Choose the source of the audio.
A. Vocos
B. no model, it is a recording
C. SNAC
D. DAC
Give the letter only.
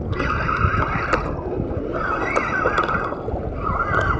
B